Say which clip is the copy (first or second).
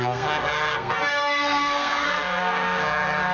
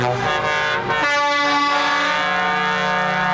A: first